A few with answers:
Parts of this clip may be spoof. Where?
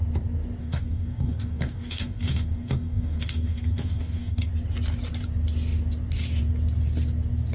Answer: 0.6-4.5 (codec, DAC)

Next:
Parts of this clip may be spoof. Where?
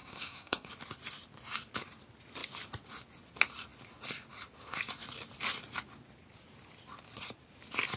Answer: 0.0-0.7 (codec, SNAC)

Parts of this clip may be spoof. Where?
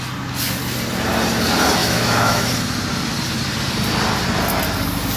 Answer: 1.8-2.5 (autoencoder, DAC-VAE)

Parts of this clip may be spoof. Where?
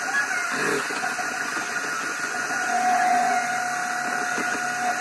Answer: 0.6-3.6 (vocoder, Vocos)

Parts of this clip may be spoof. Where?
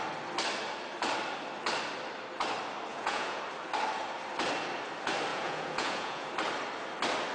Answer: 2.9-3.4 (vocoder, Vocos); 5.3-6.3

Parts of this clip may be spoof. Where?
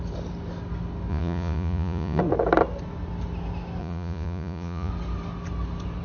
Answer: 1.1-2.2 (vocoder, Vocos); 3.8-4.9